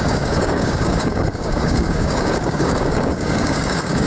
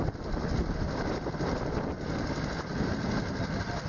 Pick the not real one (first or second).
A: first